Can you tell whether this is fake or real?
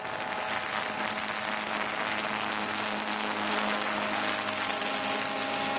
real